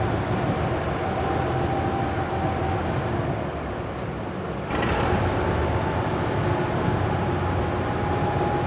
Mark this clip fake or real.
real